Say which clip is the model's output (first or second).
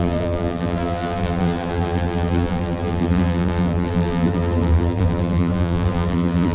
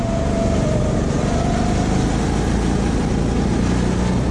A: first